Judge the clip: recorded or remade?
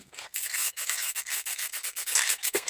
remade